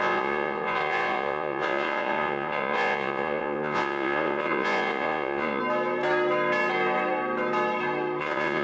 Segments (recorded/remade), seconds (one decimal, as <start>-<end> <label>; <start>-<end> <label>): 0.0-5.6 remade; 5.6-8.2 recorded; 8.2-8.6 remade